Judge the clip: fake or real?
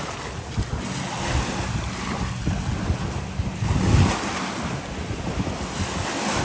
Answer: real